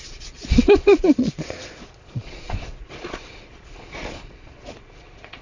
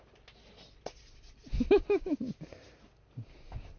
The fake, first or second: first